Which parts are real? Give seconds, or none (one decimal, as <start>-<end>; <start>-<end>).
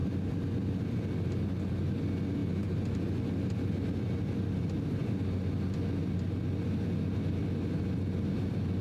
0.0-8.8